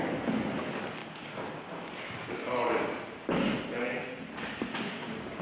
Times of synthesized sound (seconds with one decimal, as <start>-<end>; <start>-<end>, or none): 4.7-5.4